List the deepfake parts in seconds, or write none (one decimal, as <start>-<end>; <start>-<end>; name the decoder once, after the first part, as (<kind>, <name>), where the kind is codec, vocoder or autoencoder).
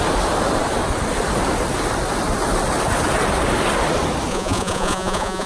4.3-5.5 (vocoder, Vocos)